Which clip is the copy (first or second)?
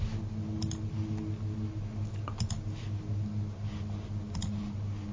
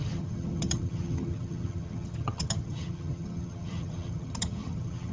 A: second